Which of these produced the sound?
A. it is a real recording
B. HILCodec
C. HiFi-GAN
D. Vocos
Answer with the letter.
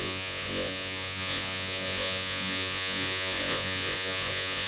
D